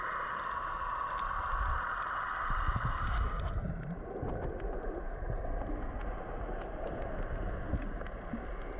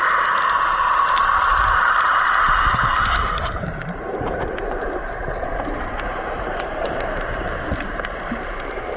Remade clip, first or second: second